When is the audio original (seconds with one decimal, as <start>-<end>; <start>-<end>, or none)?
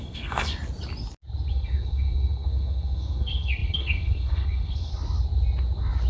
0.5-1.5; 4.9-6.1